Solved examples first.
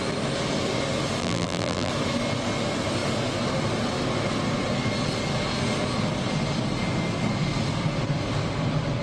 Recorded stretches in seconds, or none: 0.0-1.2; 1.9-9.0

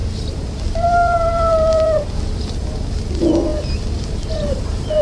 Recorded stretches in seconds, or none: 3.0-3.5

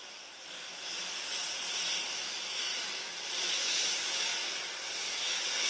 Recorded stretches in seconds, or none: 0.0-2.3; 2.7-3.5; 4.4-5.1

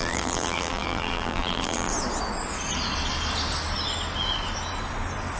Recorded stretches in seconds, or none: 1.9-5.4